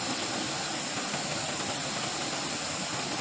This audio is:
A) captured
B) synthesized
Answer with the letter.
A